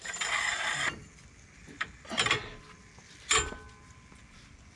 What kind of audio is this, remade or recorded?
recorded